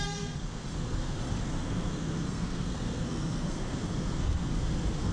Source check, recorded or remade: remade